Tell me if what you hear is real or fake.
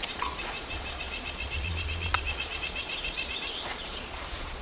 fake